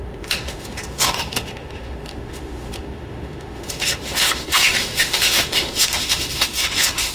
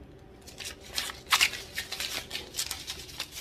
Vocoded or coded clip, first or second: first